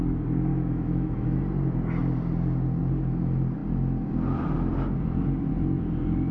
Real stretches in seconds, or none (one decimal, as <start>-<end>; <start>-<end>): 0.0-0.5; 1.4-6.3